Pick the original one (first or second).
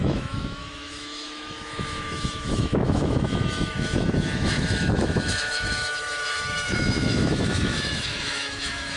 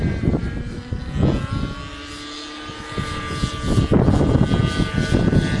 second